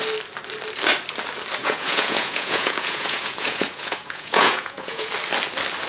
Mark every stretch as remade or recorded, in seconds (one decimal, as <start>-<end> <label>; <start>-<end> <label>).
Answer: 0.0-1.6 recorded; 1.6-5.1 remade; 5.1-5.9 recorded